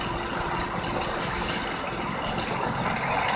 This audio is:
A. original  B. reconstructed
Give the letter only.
A